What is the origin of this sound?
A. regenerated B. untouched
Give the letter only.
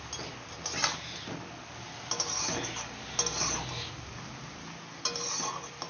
B